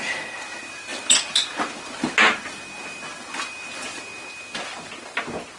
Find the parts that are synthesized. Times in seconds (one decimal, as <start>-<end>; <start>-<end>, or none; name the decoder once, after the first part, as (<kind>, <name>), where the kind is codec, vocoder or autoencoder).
none